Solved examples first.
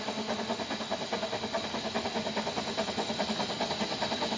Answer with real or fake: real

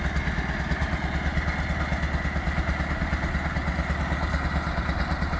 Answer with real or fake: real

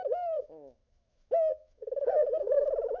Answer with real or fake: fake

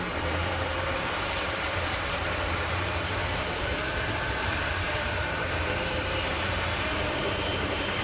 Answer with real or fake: fake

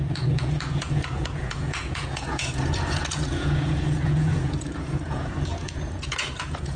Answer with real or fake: fake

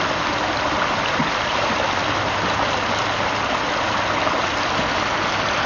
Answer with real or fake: real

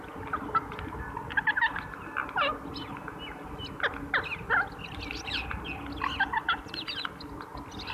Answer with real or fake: real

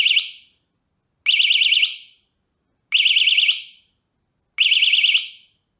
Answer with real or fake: real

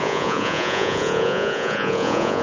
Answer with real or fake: fake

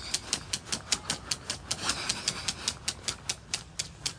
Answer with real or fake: real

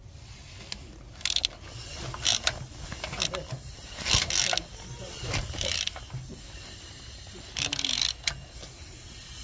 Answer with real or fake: real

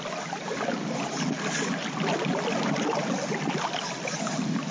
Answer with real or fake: real